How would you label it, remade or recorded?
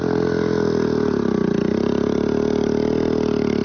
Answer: recorded